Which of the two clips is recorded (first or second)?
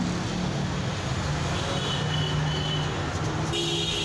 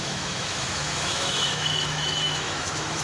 first